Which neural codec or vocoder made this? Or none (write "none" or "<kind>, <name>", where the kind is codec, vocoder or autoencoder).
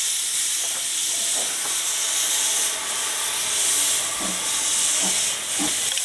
none